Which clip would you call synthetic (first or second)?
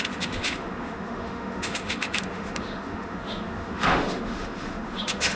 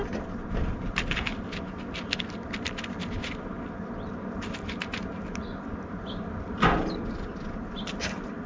first